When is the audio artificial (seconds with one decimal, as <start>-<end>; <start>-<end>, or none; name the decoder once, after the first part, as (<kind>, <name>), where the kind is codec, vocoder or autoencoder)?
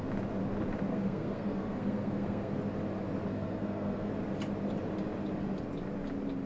0.9-2.6 (codec, SNAC); 3.3-4.1